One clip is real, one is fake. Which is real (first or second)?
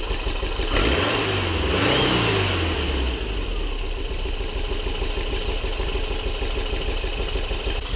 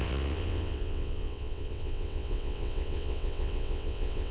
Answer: first